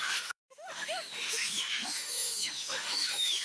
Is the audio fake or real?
fake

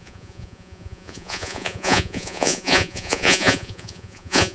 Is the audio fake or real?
fake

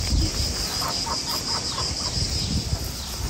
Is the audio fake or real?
real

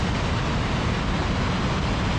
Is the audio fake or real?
real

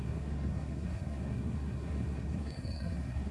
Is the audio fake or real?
fake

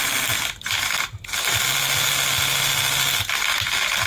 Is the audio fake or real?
real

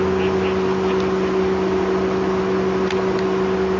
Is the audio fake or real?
real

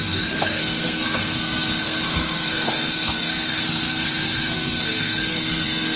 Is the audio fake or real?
fake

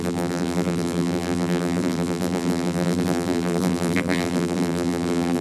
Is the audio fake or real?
fake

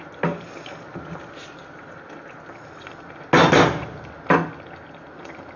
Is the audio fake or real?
real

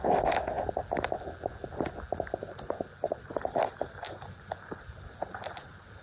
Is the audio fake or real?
real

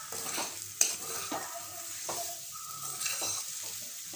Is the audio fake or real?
fake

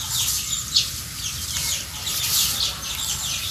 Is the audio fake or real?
fake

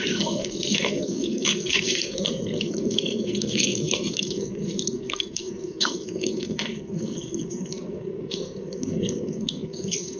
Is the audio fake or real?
fake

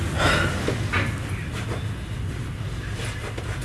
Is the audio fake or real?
real